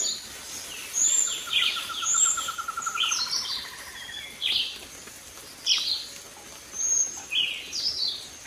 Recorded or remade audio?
recorded